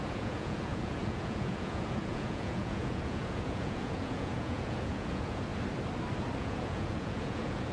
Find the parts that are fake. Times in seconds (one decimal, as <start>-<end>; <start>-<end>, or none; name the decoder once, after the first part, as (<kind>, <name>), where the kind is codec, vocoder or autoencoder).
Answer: 0.0-5.5 (vocoder, Vocos); 6.4-7.7